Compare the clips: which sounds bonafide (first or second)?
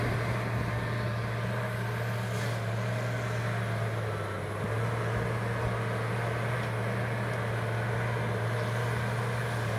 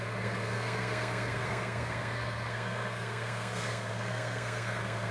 first